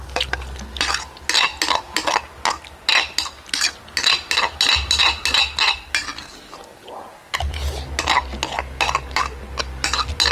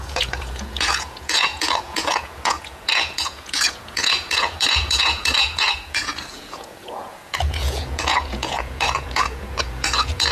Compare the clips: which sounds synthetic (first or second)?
second